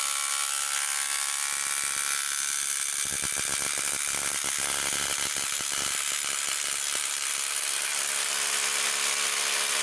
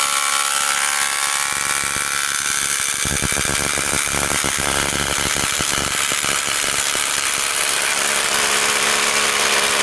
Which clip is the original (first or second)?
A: first